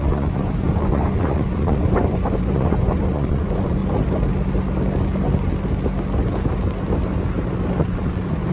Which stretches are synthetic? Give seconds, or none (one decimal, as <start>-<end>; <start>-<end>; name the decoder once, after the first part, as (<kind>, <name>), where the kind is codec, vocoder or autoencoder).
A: 0.0-3.8 (vocoder, Vocos); 7.8-8.5